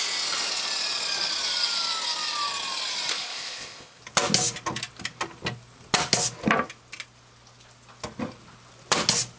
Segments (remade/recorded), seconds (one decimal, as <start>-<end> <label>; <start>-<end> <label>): 0.0-3.1 recorded; 3.1-4.0 remade; 4.0-9.4 recorded